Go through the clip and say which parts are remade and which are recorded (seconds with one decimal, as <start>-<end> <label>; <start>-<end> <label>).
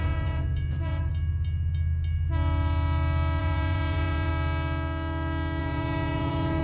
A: 0.0-1.1 remade; 1.1-3.4 recorded; 3.4-4.3 remade; 4.3-5.6 recorded; 5.6-6.6 remade